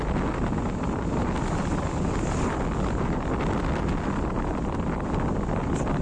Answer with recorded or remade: recorded